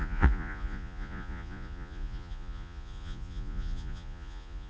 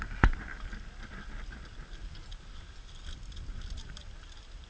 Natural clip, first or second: second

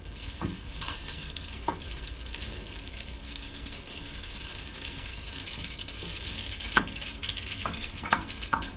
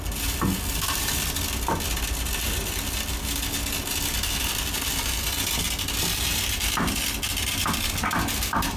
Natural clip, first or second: second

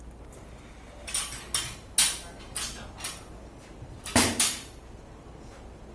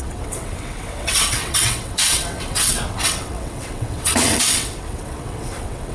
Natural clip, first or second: first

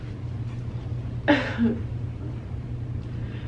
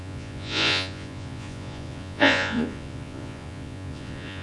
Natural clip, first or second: first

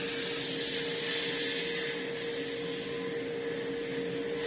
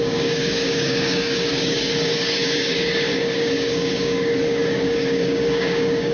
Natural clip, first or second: first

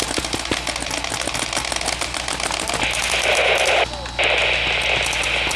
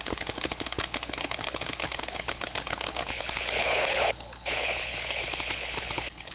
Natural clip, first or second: first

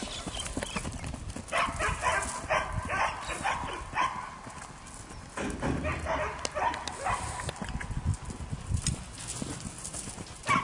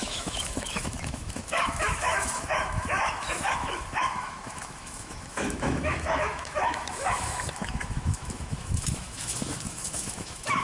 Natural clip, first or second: first